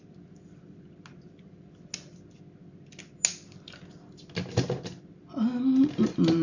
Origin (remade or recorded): recorded